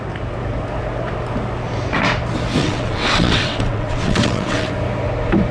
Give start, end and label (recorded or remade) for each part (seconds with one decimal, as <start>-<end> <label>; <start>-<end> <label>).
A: 0.0-2.6 recorded; 2.6-4.7 remade; 4.7-5.5 recorded